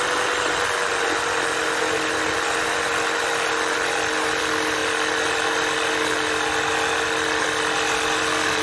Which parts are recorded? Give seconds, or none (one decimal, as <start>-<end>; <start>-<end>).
0.0-8.6